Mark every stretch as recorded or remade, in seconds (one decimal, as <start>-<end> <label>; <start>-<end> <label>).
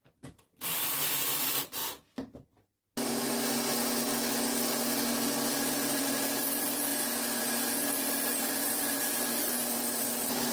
0.0-1.8 remade; 1.8-5.5 recorded; 5.5-6.9 remade; 6.9-7.4 recorded; 7.4-10.5 remade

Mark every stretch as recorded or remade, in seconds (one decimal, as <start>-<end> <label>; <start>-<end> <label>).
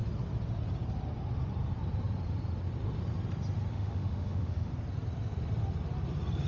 0.0-3.7 recorded; 3.7-4.7 remade; 4.7-6.5 recorded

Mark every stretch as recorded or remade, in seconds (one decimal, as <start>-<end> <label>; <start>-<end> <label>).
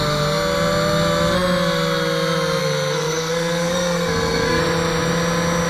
0.0-2.6 recorded; 2.6-4.6 remade; 4.6-5.7 recorded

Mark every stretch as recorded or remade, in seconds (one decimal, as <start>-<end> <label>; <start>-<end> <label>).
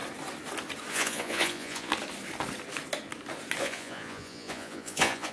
0.0-0.9 recorded; 0.9-1.9 remade; 1.9-3.6 recorded; 3.6-5.3 remade